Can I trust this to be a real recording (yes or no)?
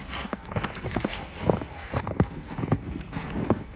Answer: no